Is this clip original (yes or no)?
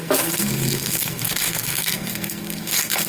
no